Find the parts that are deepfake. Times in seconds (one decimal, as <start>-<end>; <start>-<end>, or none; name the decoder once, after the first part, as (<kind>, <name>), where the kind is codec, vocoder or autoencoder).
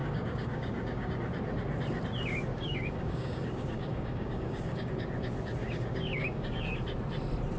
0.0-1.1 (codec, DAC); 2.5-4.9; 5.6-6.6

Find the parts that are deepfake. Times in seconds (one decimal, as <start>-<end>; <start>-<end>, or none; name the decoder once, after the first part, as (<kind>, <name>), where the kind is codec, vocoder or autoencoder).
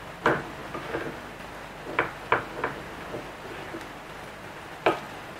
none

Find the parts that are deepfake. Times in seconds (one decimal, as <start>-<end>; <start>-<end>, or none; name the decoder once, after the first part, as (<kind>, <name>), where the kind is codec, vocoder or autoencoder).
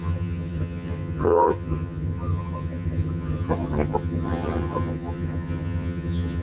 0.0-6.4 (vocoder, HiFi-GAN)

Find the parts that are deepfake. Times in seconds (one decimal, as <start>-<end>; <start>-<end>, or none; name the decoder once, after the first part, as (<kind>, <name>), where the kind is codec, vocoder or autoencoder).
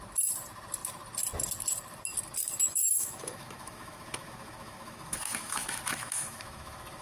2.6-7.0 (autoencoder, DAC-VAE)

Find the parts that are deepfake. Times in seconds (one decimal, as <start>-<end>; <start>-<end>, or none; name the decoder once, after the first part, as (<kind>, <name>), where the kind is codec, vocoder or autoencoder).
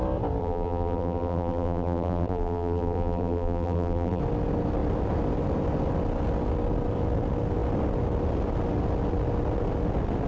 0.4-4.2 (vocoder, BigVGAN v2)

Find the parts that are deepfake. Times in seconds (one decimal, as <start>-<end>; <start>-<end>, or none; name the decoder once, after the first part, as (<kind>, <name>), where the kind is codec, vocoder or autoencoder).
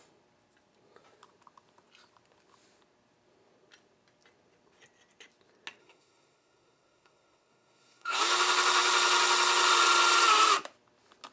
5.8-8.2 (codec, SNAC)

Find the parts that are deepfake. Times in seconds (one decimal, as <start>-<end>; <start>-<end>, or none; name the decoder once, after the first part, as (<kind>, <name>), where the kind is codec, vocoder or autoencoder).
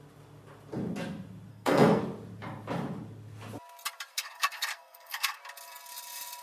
1.5-2.0 (codec, SNAC); 4.1-5.4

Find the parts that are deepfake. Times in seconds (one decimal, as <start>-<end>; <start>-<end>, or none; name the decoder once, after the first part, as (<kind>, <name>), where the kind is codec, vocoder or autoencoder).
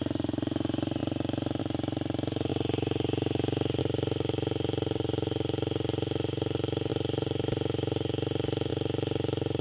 0.0-2.5 (vocoder, BigVGAN v2); 3.8-9.6